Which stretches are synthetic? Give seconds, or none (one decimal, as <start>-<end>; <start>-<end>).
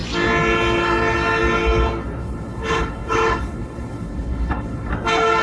2.2-4.9